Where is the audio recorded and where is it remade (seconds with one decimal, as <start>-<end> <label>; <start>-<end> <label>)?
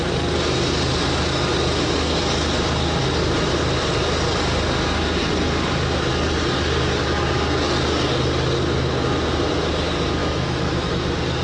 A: 0.0-10.2 recorded; 10.2-10.9 remade; 10.9-11.4 recorded